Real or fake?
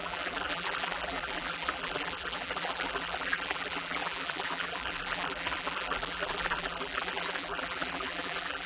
fake